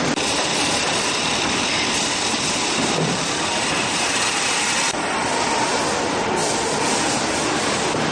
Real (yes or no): yes